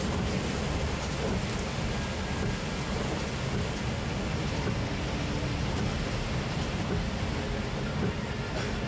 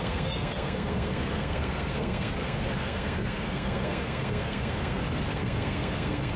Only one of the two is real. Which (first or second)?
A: first